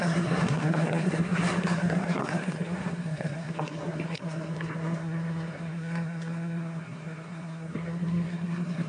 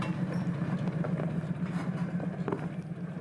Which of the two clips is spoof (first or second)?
first